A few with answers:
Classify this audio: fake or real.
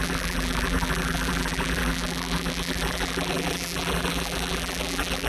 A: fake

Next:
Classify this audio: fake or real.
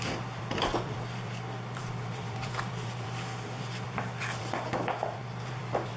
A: fake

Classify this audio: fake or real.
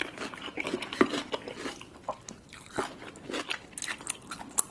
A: real